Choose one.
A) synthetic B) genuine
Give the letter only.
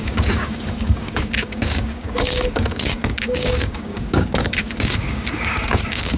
A